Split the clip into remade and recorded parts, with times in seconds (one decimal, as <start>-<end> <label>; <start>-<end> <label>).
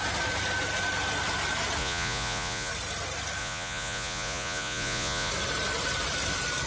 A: 0.0-1.8 recorded; 1.8-2.7 remade; 2.7-3.4 recorded; 3.4-5.3 remade; 5.3-6.7 recorded